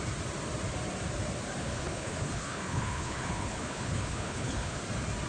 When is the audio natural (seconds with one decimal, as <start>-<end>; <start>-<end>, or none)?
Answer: 0.0-1.6; 4.8-5.3